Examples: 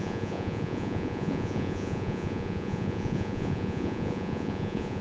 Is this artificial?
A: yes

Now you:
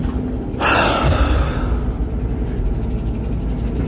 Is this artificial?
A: no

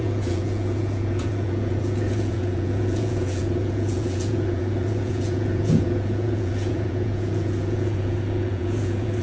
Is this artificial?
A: yes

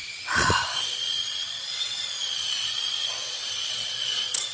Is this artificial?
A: yes